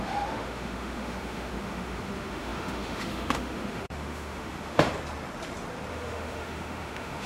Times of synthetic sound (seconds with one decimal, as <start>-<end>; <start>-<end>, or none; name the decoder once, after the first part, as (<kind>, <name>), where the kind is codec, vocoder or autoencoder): 0.0-4.9 (autoencoder, DAC-VAE); 5.9-7.3